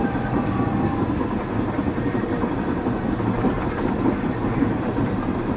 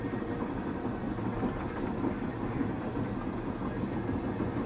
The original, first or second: second